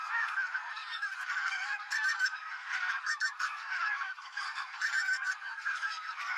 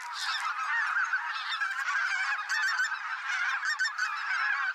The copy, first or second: first